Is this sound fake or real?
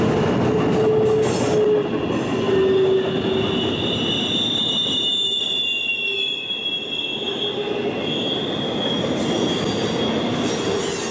real